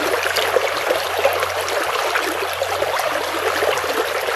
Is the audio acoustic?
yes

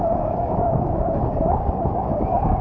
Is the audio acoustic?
no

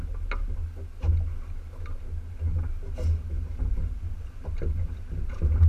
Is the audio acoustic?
yes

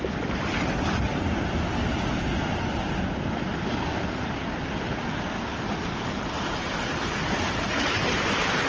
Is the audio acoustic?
yes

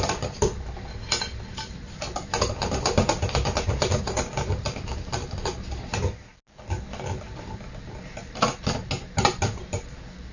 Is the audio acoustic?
yes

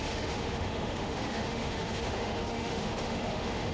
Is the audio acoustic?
no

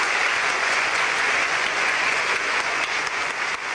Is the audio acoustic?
no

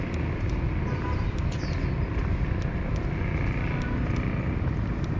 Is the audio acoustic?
yes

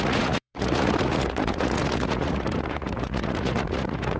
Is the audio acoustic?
no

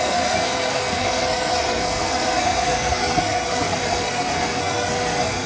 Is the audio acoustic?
no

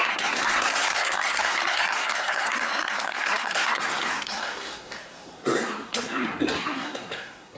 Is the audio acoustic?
no